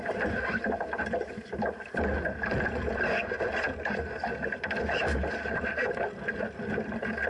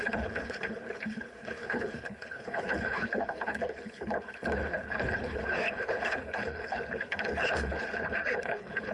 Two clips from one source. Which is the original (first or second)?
first